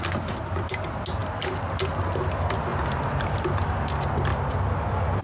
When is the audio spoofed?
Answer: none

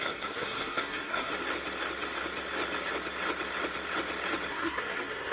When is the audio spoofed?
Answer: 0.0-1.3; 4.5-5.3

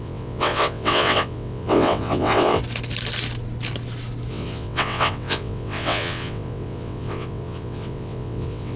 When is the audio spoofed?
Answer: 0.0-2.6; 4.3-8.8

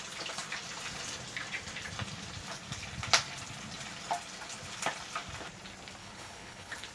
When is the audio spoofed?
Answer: 6.0-6.9